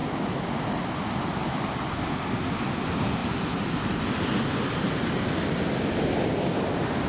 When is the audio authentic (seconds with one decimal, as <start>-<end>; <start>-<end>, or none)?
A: 0.0-7.1